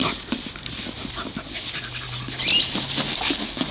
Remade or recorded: recorded